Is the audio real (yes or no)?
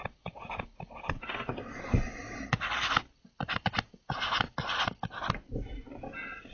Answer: yes